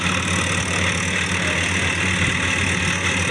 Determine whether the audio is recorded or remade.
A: recorded